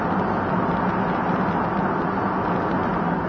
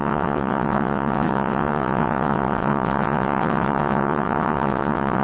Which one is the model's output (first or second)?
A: second